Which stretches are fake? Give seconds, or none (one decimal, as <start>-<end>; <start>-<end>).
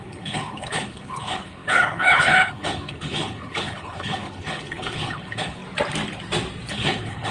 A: 0.0-5.6; 6.7-7.3